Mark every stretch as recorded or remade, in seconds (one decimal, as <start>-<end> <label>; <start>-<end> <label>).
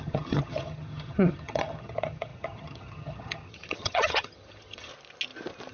0.0-4.9 remade; 4.9-5.7 recorded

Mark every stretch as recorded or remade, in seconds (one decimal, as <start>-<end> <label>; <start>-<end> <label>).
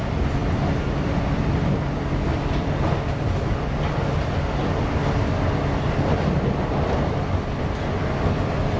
0.0-8.8 recorded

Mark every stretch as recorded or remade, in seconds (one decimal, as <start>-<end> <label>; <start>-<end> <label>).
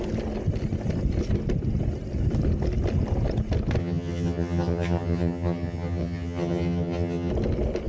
0.0-3.8 recorded; 3.8-7.3 remade; 7.3-7.9 recorded